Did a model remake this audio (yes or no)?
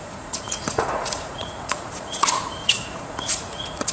yes